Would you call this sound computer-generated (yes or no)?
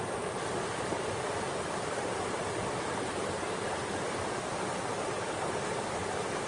no